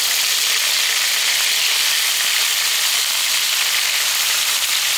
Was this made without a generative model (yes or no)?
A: yes